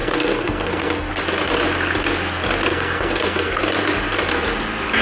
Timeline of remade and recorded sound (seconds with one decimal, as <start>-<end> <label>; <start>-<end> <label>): 0.0-1.1 remade; 1.1-2.7 recorded; 2.7-3.6 remade; 3.6-5.0 recorded